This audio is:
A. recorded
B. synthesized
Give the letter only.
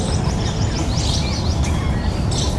A